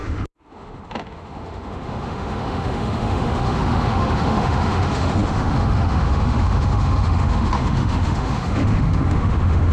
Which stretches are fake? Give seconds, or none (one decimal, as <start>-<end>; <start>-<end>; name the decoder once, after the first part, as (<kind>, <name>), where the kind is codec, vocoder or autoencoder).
0.0-9.7 (autoencoder, DAC-VAE)